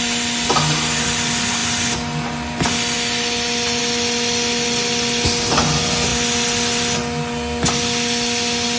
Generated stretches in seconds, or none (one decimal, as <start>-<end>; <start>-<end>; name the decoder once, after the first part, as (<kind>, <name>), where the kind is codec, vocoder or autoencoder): none